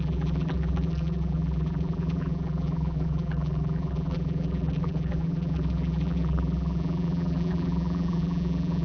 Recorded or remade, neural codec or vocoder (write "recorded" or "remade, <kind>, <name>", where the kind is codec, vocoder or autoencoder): remade, vocoder, BigVGAN v2